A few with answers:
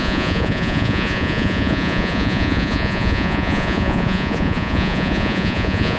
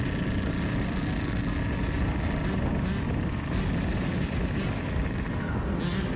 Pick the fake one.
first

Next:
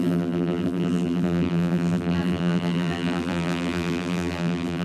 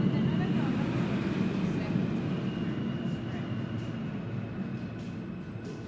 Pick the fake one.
first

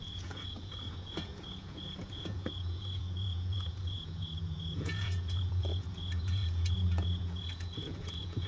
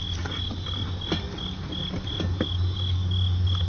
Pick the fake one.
first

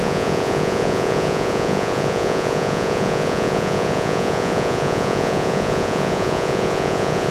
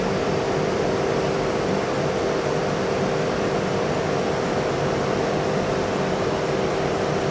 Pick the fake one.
first